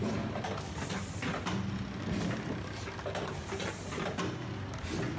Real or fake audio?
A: real